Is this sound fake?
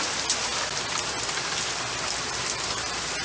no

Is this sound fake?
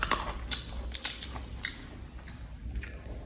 no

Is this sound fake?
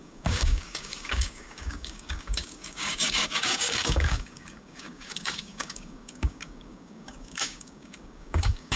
yes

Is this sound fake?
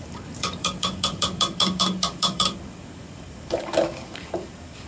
yes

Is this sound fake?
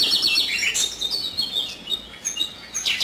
no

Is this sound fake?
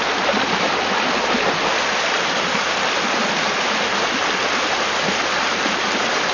no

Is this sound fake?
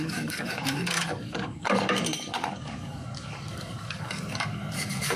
yes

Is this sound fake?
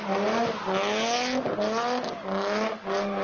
no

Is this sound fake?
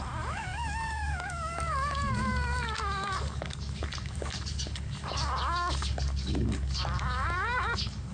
yes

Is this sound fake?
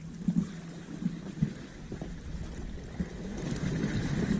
no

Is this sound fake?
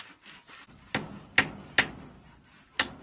no